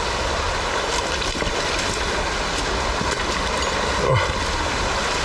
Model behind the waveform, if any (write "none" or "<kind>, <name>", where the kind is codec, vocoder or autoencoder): none